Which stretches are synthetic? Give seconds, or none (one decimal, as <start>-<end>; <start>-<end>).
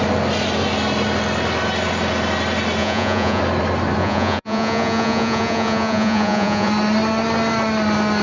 2.8-3.4; 4.0-6.7